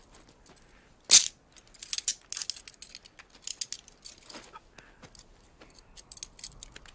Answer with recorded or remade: recorded